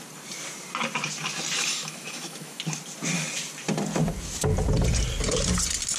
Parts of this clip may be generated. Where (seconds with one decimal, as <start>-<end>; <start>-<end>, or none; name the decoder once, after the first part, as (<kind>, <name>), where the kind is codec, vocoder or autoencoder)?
1.7-2.6 (autoencoder, DAC-VAE)